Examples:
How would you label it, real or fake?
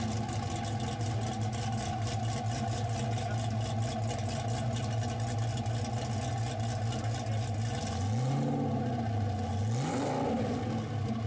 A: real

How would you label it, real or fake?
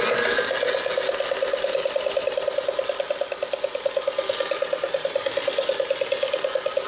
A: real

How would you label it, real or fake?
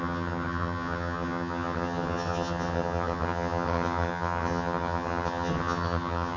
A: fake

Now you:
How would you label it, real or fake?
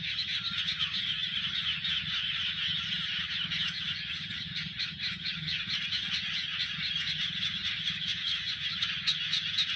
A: fake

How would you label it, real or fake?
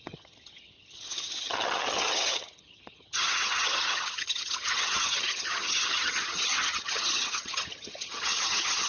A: fake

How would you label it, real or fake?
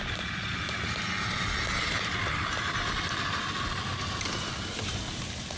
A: real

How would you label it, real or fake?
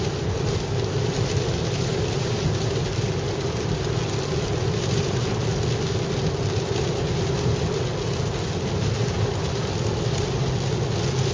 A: real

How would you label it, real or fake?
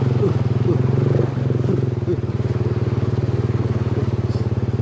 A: real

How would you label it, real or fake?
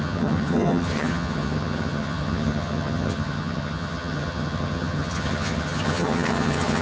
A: fake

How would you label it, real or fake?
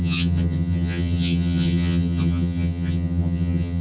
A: fake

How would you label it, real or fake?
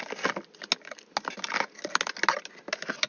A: real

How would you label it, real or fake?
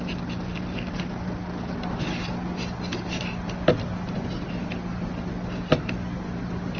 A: real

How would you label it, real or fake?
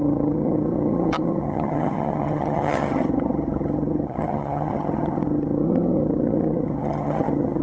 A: fake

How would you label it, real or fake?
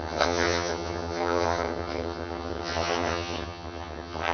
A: fake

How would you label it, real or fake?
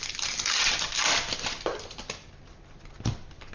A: real